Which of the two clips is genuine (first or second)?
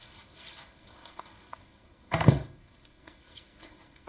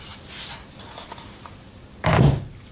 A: second